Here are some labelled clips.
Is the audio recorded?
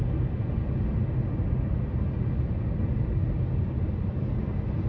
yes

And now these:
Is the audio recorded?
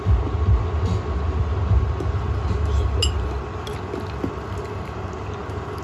yes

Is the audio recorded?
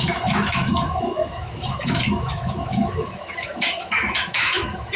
no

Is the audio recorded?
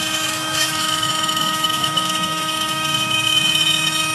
no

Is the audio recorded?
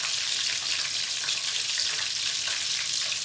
yes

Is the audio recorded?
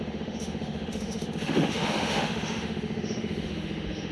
no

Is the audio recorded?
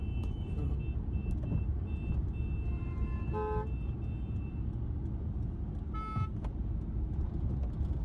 yes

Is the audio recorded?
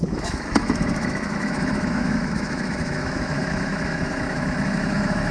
no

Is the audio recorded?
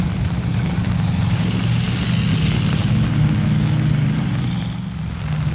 yes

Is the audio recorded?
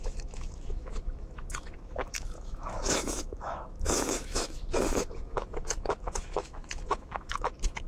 no